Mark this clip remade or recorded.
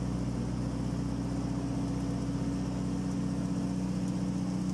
recorded